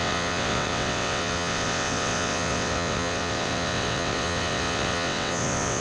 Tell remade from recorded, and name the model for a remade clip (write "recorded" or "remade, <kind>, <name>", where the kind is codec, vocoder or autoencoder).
remade, vocoder, WaveNeXt